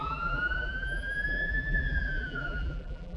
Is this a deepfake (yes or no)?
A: yes